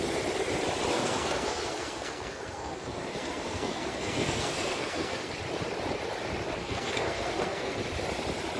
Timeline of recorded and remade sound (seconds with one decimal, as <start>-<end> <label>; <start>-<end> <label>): 0.0-0.9 recorded; 0.9-5.3 remade; 5.3-6.6 recorded; 6.6-7.8 remade; 7.8-8.6 recorded